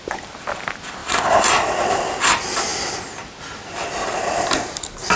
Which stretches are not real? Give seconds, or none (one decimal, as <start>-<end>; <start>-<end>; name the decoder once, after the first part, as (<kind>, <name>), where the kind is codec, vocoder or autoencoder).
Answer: none